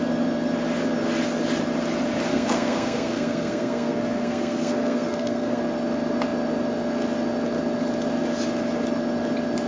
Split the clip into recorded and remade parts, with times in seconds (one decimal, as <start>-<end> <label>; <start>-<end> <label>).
0.0-2.3 recorded; 2.3-5.6 remade; 5.6-9.7 recorded